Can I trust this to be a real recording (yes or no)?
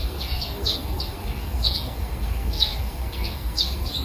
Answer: no